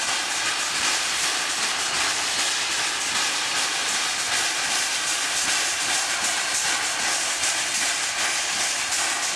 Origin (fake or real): real